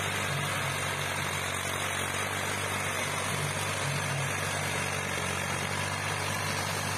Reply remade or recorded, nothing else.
recorded